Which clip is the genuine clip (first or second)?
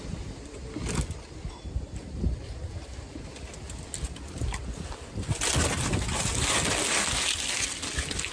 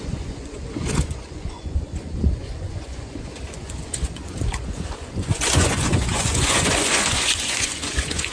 first